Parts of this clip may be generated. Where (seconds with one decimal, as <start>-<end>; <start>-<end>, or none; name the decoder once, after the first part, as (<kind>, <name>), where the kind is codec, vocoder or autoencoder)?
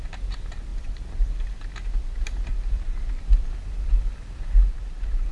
0.7-3.9 (vocoder, BigVGAN v2); 4.6-5.3